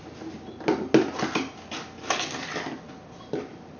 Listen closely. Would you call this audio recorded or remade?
recorded